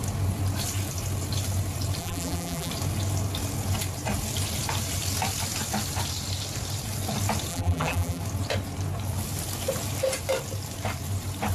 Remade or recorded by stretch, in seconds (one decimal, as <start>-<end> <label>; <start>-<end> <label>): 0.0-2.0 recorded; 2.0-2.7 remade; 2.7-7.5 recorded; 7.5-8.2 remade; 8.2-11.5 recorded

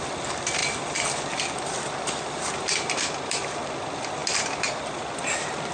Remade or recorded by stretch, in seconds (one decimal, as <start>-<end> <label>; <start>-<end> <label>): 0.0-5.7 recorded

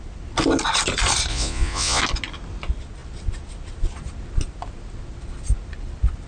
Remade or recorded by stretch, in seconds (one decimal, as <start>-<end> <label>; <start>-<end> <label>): 0.0-1.3 recorded; 1.3-2.0 remade; 2.0-6.3 recorded

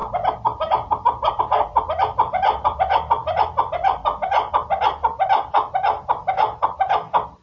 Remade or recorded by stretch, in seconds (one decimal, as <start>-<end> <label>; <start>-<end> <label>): 0.0-7.4 recorded

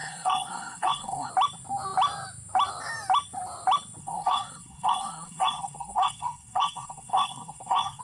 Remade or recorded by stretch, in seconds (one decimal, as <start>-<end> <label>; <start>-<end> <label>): 0.0-1.3 remade; 1.3-4.0 recorded; 4.0-8.0 remade

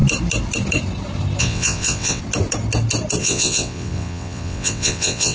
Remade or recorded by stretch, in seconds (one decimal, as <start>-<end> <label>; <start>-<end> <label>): 0.0-1.4 recorded; 1.4-2.2 remade; 2.2-3.2 recorded; 3.2-5.3 remade